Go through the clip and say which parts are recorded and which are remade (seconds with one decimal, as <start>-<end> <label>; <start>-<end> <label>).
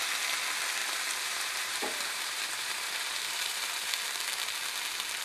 0.0-0.8 recorded; 0.8-3.9 remade; 3.9-5.2 recorded